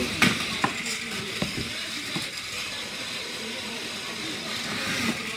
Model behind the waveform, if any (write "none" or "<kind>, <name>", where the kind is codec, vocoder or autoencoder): none